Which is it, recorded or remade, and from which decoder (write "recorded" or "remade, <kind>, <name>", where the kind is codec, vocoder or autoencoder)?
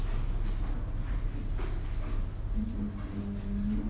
recorded